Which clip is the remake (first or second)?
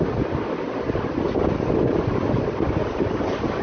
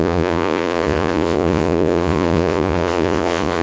second